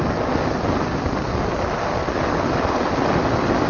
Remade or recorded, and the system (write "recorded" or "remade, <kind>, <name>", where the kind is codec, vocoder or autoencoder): recorded